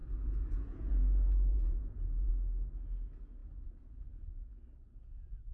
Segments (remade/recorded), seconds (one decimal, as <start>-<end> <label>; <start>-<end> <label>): 0.0-0.9 remade; 0.9-1.5 recorded; 1.5-2.3 remade; 2.3-5.5 recorded